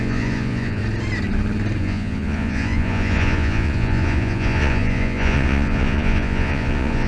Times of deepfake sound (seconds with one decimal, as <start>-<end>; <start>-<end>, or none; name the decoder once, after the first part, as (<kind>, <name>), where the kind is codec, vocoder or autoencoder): 0.0-0.8 (vocoder, Vocos); 1.8-7.1